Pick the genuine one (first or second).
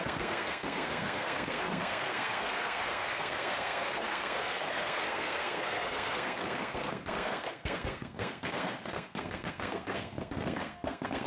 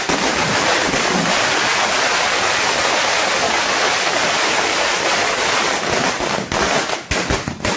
second